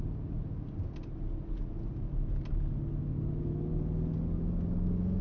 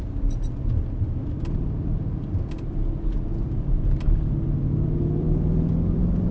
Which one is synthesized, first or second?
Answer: second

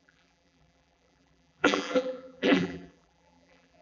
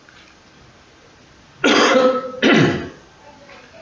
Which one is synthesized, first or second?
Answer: first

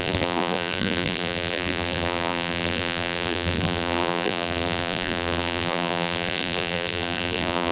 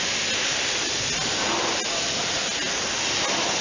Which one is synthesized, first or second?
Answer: first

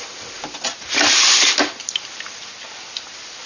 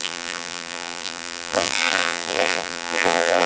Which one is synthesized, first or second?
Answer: second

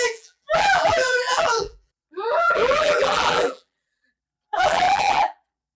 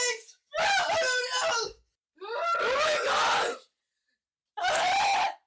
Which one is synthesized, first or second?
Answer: first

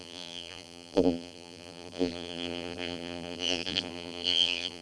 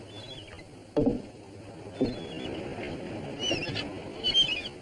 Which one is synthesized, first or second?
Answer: first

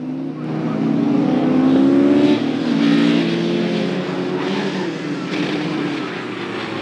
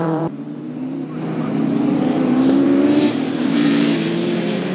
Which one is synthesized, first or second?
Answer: second